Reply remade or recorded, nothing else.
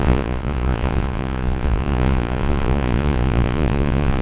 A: remade